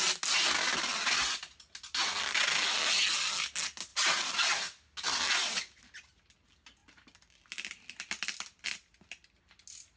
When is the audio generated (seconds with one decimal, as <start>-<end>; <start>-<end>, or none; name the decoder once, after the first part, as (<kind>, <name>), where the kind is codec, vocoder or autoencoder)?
none